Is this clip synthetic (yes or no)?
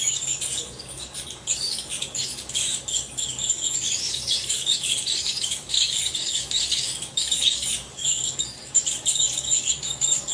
yes